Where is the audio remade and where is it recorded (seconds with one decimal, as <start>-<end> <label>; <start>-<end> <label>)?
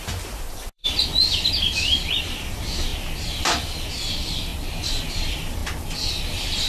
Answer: 0.0-4.5 remade; 4.5-5.1 recorded; 5.1-5.6 remade; 5.6-6.3 recorded; 6.3-6.7 remade